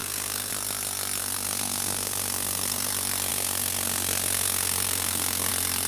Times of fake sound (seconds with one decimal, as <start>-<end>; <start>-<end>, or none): 0.0-0.5; 1.2-2.9; 3.3-5.5